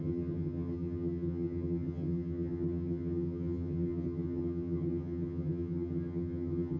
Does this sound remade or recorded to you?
remade